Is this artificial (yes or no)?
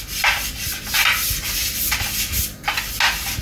no